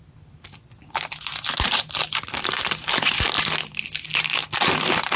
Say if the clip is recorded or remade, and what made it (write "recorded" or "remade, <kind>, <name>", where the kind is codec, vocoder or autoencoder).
recorded